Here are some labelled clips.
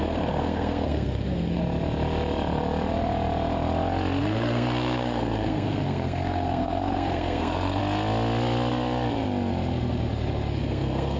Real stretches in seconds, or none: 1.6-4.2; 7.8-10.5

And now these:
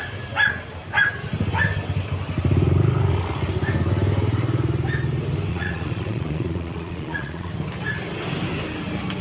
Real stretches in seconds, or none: 0.0-5.5; 7.5-9.2

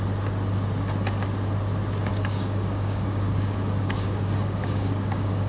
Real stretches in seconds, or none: 0.0-2.1

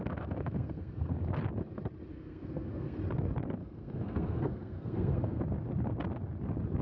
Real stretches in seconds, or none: 1.1-2.1; 3.0-3.6; 5.4-6.8

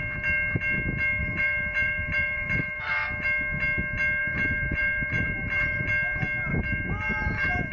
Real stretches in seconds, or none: 0.0-1.2; 2.9-4.2; 5.9-6.5